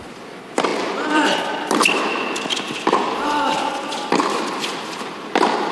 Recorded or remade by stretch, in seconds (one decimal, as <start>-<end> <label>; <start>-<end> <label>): 0.0-0.7 recorded; 0.7-1.5 remade; 1.5-5.7 recorded